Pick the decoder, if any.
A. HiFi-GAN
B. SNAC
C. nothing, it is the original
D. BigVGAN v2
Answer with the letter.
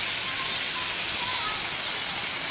C